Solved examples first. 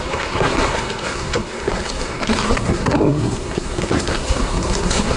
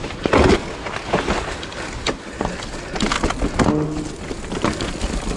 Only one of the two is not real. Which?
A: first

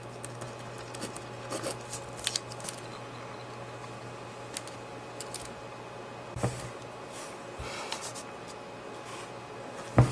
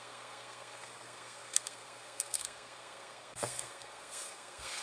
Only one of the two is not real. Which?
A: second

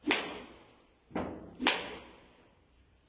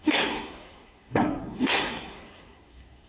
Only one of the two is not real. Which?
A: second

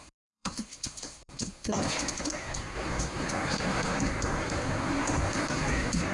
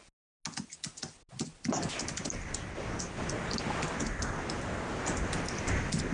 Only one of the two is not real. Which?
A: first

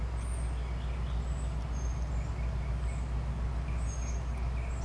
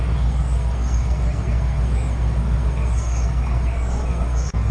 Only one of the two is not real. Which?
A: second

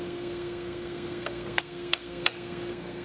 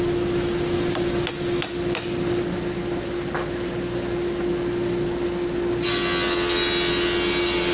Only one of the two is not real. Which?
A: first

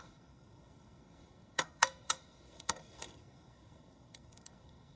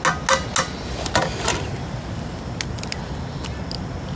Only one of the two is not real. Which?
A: first